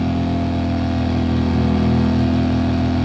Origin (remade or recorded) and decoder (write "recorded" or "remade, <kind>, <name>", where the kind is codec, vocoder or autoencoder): recorded